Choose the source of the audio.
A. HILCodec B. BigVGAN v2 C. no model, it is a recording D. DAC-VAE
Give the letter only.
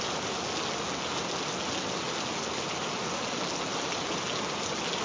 C